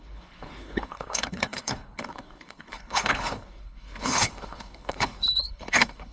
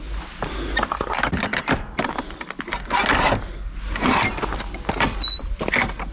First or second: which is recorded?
second